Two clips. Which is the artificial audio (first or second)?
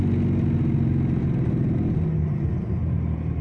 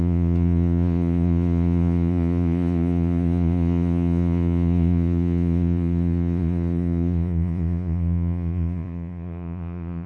second